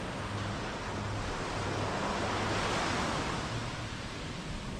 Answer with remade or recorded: recorded